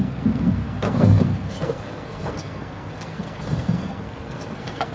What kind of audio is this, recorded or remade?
remade